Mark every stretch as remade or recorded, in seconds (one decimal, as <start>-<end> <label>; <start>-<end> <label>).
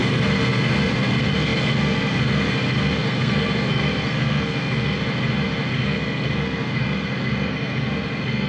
0.0-5.0 remade; 5.0-5.7 recorded; 5.7-8.5 remade